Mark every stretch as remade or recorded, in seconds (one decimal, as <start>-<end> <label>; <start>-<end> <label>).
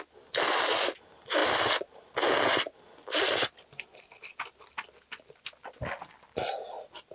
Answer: 0.0-7.1 recorded